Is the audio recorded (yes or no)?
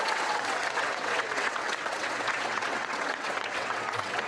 no